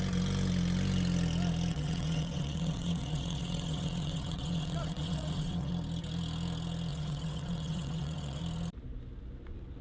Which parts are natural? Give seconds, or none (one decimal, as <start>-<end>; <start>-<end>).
0.0-1.7; 5.7-6.9; 8.4-9.8